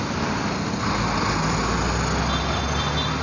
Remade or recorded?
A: recorded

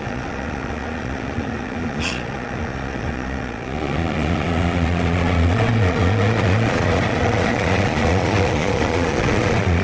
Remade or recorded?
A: remade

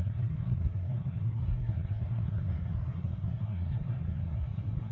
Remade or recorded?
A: remade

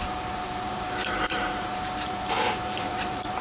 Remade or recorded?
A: remade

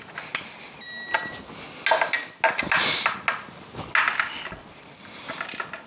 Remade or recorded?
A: recorded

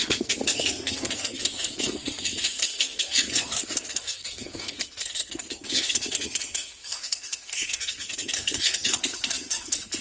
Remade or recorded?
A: remade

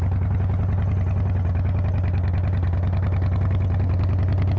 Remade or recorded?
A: recorded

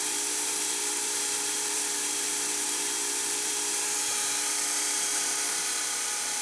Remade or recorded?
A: remade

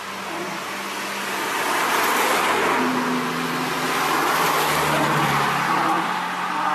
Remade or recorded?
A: recorded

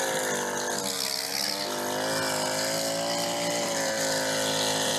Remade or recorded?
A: recorded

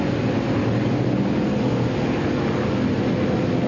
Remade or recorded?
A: recorded